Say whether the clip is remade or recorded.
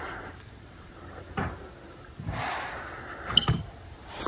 remade